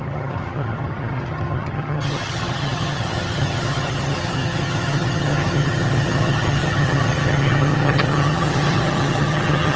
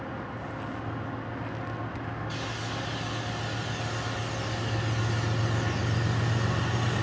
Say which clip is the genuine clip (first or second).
second